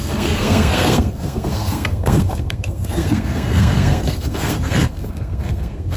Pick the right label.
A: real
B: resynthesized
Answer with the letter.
B